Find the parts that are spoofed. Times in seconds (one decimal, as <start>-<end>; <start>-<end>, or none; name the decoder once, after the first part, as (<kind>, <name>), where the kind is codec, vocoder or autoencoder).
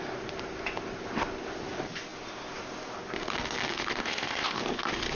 4.0-4.6 (codec, ZipCodec)